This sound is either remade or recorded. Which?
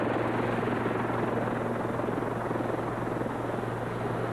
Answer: recorded